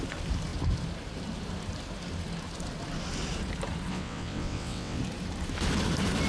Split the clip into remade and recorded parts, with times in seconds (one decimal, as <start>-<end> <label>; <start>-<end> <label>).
0.0-3.9 recorded; 3.9-5.0 remade; 5.0-6.3 recorded